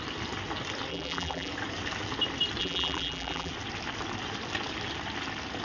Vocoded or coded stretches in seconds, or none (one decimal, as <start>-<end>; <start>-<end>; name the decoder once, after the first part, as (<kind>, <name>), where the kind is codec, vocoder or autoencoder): 0.9-1.5 (vocoder, BigVGAN v2); 2.6-3.5

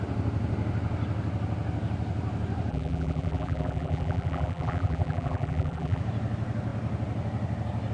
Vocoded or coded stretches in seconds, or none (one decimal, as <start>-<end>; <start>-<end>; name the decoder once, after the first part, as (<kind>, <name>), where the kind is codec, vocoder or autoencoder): 2.7-6.0 (vocoder, BigVGAN v2)

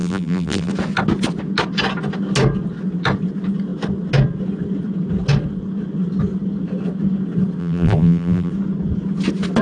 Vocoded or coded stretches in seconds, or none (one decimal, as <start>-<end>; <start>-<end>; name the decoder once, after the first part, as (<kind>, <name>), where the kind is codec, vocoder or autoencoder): 0.0-0.7 (vocoder, BigVGAN v2); 7.6-8.5

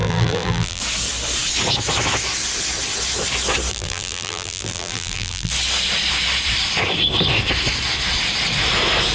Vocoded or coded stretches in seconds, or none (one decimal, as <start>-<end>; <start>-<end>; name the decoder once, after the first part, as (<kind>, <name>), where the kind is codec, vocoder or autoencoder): 0.0-0.8 (vocoder, BigVGAN v2); 3.7-5.5

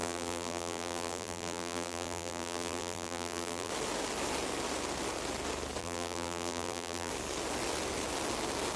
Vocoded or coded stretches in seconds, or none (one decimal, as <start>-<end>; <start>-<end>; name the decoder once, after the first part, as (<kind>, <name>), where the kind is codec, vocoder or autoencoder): 0.0-3.7 (vocoder, BigVGAN v2); 5.8-7.1